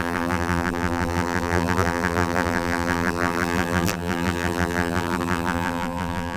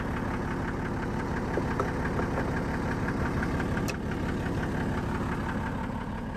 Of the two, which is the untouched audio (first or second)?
second